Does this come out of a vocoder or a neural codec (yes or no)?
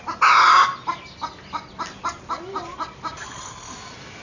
no